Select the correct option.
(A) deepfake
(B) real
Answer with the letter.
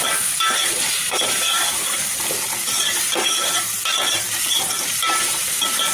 A